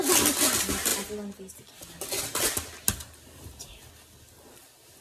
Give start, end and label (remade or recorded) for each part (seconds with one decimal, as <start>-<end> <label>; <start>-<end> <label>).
0.0-5.0 recorded